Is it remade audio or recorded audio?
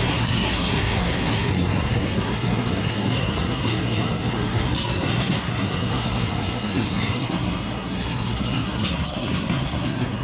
remade